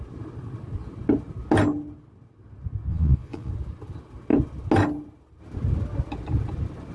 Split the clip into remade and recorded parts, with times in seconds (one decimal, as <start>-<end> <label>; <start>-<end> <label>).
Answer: 0.0-2.9 recorded; 2.9-3.5 remade; 3.5-6.9 recorded